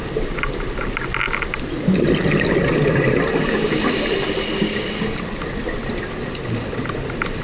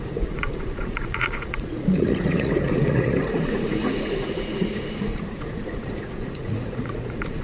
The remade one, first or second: second